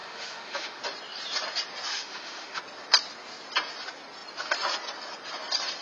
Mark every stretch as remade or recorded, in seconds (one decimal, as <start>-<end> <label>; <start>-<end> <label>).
0.0-0.8 remade; 0.8-1.9 recorded; 1.9-2.6 remade; 2.6-5.8 recorded